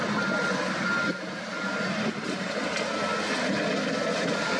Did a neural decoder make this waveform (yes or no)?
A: no